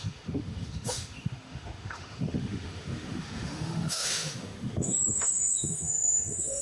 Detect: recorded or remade remade